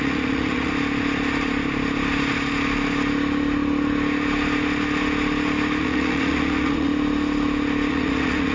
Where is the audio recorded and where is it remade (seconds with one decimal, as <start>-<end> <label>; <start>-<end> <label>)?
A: 0.0-0.7 remade; 0.7-5.8 recorded; 5.8-6.9 remade; 6.9-7.9 recorded; 7.9-8.5 remade